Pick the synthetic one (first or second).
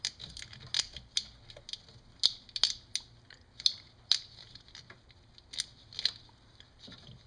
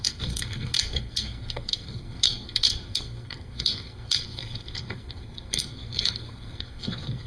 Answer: second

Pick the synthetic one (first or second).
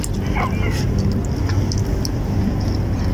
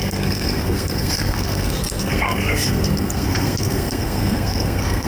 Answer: second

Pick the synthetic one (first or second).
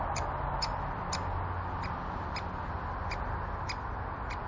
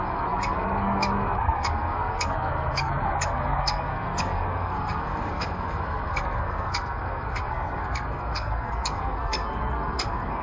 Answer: second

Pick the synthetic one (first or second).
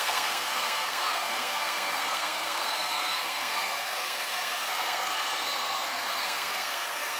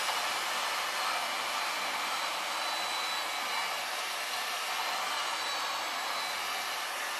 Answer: first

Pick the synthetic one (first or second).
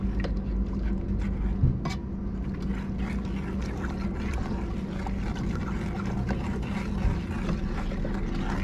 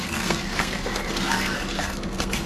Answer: second